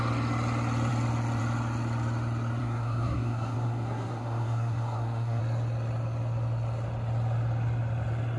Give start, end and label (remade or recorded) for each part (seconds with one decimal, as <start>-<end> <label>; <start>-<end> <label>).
0.0-2.6 recorded; 2.6-5.4 remade; 5.4-8.4 recorded